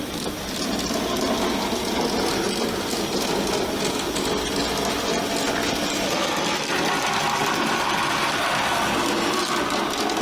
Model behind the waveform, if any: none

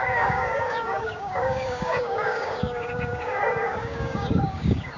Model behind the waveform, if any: codec, DAC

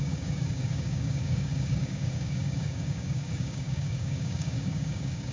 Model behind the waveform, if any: codec, DAC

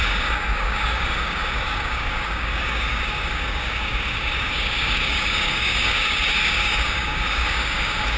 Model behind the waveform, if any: codec, DAC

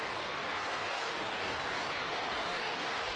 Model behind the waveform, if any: codec, DAC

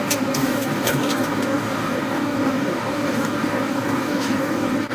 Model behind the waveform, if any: codec, DAC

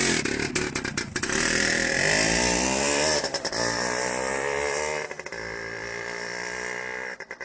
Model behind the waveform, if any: none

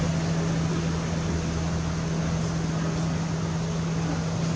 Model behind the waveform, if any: none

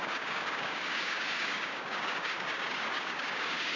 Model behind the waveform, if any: codec, DAC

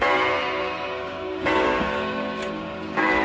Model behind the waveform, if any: codec, DAC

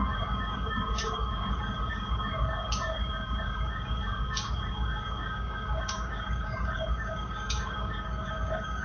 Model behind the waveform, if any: codec, DAC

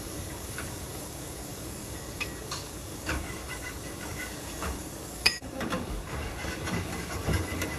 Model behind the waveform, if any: codec, DAC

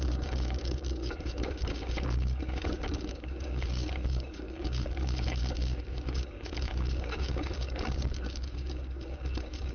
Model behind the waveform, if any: codec, DAC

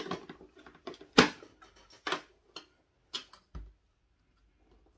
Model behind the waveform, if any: none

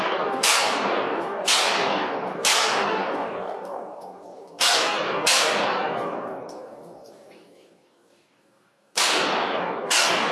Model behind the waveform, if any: codec, DAC